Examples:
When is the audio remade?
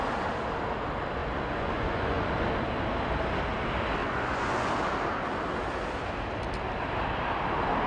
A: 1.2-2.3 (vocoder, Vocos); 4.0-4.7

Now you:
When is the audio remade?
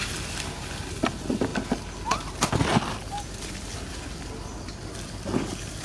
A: none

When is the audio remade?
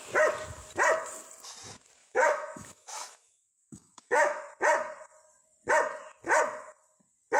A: 2.0-4.5 (autoencoder, DAC-VAE)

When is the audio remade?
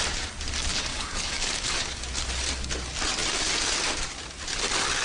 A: 0.7-2.0 (codec, DAC)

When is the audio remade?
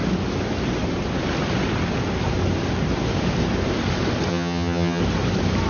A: 4.3-5.0 (vocoder, HiFi-GAN)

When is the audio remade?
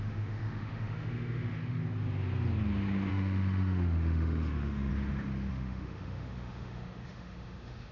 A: 0.0-1.8 (autoencoder, DAC-VAE); 3.1-4.9; 5.5-7.9